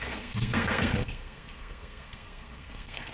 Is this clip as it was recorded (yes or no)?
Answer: no